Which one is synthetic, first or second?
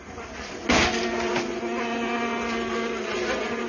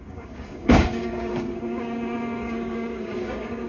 second